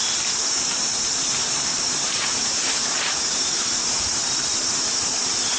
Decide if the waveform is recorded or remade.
remade